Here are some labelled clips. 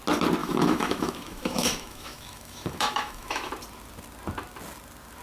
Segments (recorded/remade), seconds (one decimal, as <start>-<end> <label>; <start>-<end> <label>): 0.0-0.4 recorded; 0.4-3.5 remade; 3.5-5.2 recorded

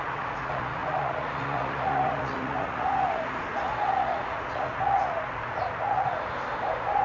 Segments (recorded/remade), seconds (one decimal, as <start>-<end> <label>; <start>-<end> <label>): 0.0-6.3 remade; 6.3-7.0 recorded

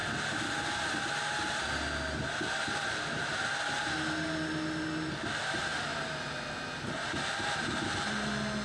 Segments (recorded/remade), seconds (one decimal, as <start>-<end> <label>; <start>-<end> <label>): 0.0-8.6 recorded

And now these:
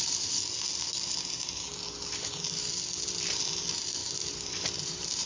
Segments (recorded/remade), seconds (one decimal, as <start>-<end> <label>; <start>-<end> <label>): 0.0-0.4 remade; 0.4-3.6 recorded; 3.6-4.0 remade; 4.0-4.8 recorded; 4.8-5.3 remade